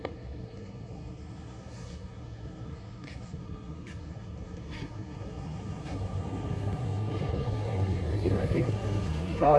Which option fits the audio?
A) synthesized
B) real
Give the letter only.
A